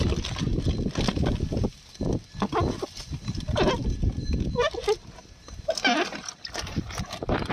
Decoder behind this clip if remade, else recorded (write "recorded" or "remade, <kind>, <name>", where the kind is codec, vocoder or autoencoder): recorded